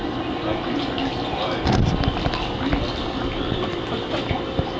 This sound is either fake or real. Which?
real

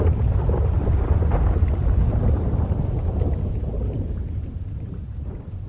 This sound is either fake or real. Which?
real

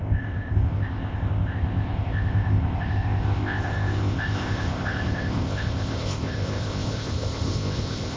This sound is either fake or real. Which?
fake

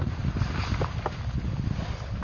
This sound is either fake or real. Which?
real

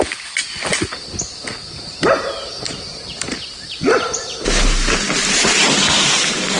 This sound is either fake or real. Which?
real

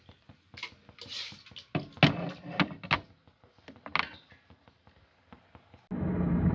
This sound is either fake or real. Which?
real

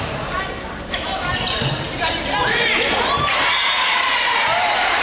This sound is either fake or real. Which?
fake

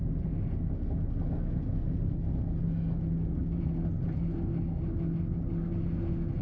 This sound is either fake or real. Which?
real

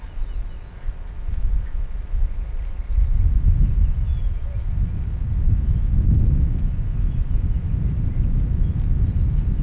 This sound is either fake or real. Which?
real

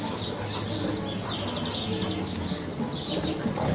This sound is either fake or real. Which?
real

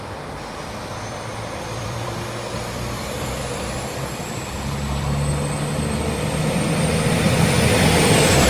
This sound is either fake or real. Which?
fake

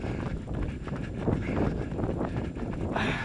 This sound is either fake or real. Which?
real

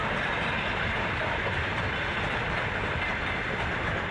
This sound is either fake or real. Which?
real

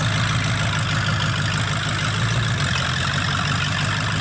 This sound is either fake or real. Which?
real